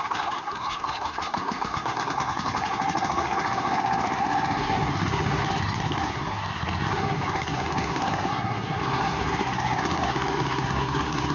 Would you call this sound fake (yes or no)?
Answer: yes